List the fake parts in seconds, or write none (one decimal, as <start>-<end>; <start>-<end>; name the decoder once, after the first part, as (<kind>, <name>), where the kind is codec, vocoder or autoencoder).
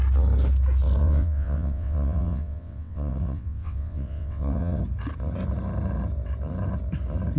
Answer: 1.0-4.8 (vocoder, WaveNeXt)